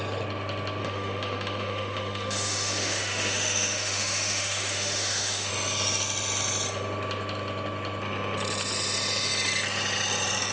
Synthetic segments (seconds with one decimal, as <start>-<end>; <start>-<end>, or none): 0.8-5.5